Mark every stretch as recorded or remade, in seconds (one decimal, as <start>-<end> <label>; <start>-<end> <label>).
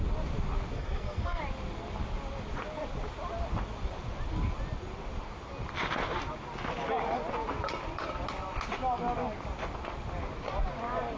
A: 0.0-0.7 recorded; 0.7-1.4 remade; 1.4-11.2 recorded